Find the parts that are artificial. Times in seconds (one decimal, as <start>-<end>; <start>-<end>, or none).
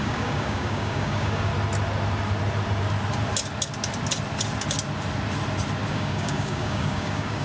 0.0-1.5; 5.9-7.4